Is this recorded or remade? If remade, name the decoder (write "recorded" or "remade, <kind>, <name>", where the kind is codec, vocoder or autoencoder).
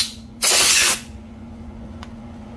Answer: remade, vocoder, Vocos